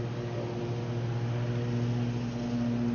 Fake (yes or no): no